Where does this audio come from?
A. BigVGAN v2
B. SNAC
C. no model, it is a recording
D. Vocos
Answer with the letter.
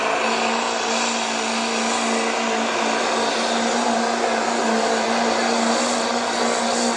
C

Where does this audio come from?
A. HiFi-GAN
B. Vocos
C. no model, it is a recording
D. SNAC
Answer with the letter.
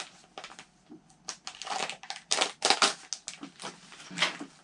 C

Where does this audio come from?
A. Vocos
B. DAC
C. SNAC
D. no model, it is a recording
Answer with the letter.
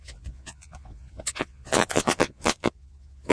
A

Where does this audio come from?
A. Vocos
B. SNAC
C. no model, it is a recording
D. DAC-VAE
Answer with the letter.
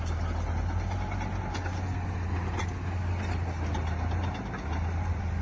C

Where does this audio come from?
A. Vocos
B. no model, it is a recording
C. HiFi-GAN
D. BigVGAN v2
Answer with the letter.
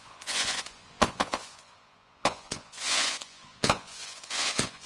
A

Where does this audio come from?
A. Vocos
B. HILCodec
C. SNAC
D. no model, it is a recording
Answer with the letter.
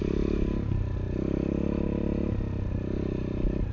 D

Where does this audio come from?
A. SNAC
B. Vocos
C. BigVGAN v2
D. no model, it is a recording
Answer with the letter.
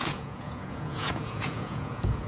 B